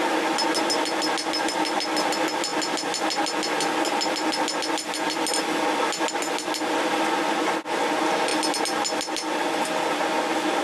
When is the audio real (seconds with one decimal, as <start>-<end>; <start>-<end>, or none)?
0.0-10.6